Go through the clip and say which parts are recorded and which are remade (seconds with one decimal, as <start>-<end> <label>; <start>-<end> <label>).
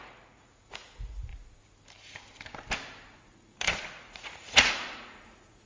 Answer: 0.0-1.3 remade; 1.3-3.2 recorded; 3.2-5.7 remade